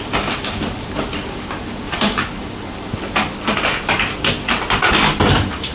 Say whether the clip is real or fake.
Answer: real